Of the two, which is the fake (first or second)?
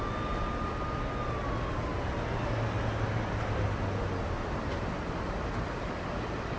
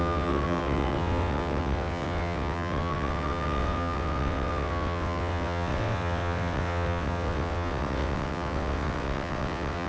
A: second